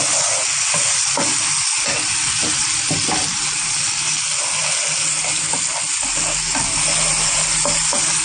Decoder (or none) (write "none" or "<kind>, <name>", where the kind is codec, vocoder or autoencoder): none